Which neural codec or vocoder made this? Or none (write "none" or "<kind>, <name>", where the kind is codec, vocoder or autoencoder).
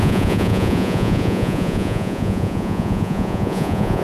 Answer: vocoder, Vocos